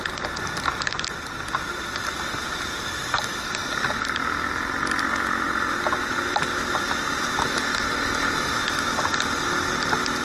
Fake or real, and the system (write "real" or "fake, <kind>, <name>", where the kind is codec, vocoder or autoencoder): real